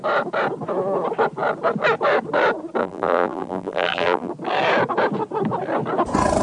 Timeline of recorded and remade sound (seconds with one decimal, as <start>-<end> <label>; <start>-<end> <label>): 0.0-2.8 recorded; 2.8-4.3 remade; 4.3-6.4 recorded

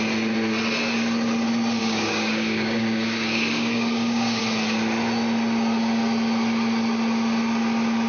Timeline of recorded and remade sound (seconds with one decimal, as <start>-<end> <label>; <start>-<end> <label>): 0.0-1.8 recorded; 1.8-4.4 remade; 4.4-8.1 recorded